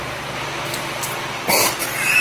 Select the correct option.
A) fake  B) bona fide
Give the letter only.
B